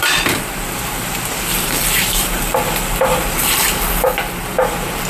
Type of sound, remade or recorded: remade